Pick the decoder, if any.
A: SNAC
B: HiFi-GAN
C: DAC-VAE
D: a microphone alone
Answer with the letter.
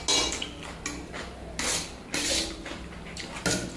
D